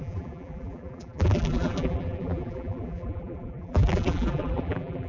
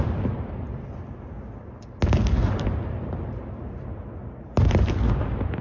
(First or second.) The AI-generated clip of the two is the first